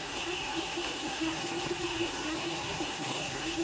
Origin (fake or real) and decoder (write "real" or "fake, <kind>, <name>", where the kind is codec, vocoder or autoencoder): fake, codec, SNAC